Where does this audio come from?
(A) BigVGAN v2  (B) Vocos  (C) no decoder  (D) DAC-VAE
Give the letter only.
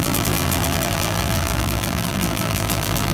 A